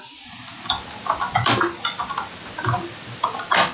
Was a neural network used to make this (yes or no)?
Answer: no